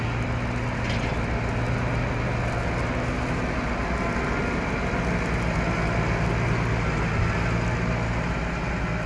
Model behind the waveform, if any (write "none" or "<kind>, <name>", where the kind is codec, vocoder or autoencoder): none